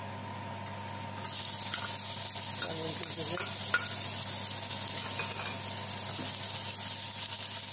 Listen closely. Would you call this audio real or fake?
real